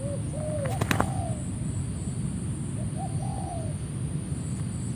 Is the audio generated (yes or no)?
no